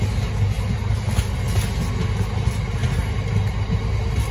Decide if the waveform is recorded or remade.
recorded